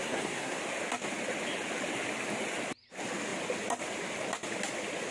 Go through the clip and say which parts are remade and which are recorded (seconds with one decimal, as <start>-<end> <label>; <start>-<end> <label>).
0.0-0.6 remade; 0.6-5.1 recorded